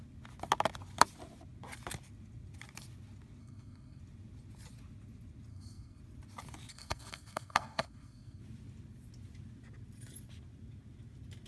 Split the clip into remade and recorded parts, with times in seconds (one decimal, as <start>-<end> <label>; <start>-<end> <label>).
0.0-3.4 recorded; 3.4-4.0 remade; 4.0-5.5 recorded; 5.5-6.0 remade; 6.0-6.7 recorded; 6.7-8.4 remade; 8.4-11.5 recorded